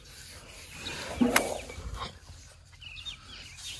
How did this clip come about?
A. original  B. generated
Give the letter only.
A